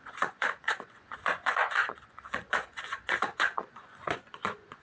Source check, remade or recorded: remade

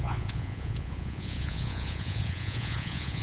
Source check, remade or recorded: remade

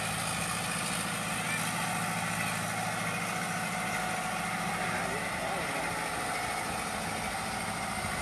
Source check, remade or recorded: recorded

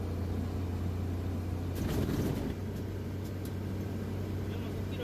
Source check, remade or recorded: recorded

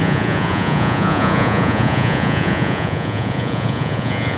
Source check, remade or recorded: remade